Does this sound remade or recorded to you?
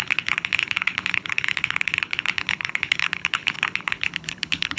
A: remade